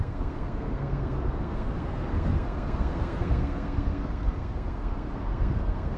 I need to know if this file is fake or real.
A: fake